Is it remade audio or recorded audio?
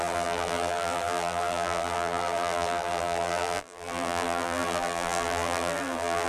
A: remade